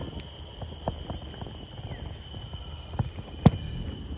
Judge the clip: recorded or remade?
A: recorded